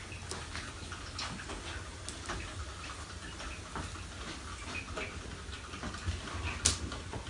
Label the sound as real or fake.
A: real